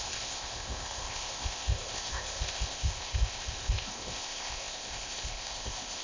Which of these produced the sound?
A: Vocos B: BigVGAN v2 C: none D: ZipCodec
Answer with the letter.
D